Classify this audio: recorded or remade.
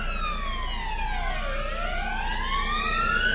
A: recorded